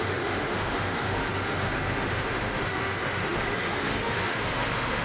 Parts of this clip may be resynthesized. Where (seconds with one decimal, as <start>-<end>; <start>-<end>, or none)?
0.0-5.0